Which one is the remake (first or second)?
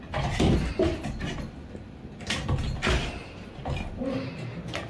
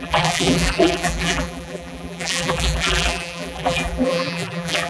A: second